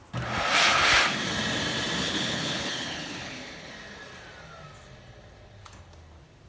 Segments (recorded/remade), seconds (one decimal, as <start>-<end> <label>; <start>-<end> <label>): 0.0-2.0 recorded; 2.0-3.7 remade; 3.7-6.5 recorded